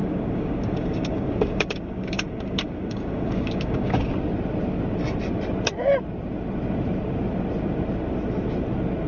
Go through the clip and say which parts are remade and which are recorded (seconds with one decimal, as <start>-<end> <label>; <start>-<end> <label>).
0.0-4.1 remade; 4.1-9.1 recorded